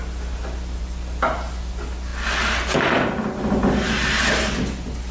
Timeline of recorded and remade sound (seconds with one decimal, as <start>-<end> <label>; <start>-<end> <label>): 0.0-5.1 recorded

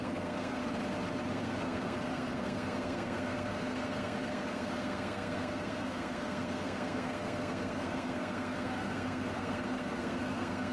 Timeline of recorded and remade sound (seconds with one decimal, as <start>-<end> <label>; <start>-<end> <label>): 0.0-0.6 remade; 0.6-1.3 recorded; 1.3-10.7 remade

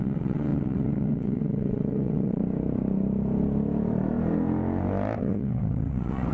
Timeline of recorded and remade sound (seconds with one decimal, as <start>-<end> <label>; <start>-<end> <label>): 0.0-2.4 remade; 2.4-5.2 recorded; 5.2-6.3 remade